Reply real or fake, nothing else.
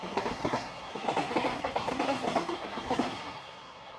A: fake